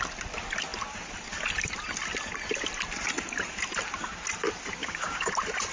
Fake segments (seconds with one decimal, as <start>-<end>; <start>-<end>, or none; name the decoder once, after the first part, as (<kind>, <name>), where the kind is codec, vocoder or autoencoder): 4.8-5.3 (codec, DAC)